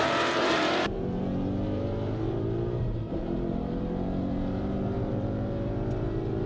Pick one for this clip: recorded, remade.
remade